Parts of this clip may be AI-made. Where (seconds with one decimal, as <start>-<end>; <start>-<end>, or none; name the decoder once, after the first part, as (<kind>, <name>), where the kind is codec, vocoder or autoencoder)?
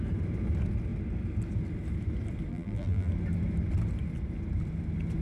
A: 2.5-3.1 (vocoder, BigVGAN v2)